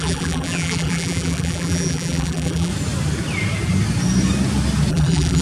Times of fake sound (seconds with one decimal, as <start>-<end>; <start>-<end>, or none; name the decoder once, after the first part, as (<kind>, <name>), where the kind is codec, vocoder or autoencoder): 0.0-2.7 (vocoder, BigVGAN v2); 4.9-5.4